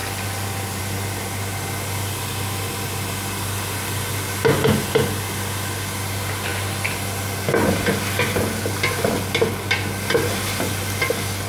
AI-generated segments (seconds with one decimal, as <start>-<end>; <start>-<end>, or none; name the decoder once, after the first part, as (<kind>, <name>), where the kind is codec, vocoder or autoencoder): none